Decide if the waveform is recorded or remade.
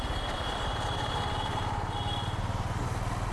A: recorded